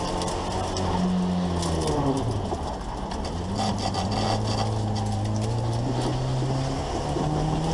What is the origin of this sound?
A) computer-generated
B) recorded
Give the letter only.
B